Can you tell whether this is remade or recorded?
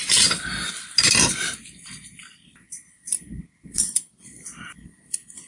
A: recorded